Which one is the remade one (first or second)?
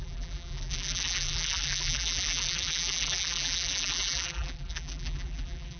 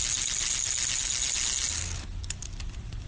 first